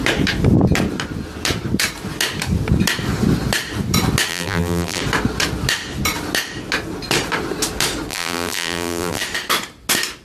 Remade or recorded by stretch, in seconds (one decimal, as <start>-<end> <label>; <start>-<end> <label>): 0.0-4.3 recorded; 4.3-5.0 remade; 5.0-8.1 recorded; 8.1-9.2 remade; 9.2-10.2 recorded